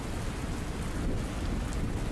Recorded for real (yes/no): yes